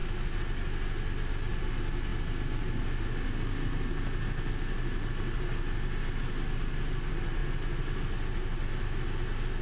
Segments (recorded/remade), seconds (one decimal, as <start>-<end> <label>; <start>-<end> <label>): 0.0-9.6 recorded